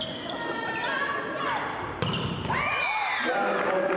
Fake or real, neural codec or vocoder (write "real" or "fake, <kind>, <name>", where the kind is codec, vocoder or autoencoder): real